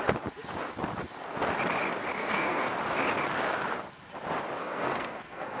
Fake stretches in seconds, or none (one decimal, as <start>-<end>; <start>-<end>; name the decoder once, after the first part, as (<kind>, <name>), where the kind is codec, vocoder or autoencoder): 2.2-2.7 (codec, SNAC); 4.6-5.6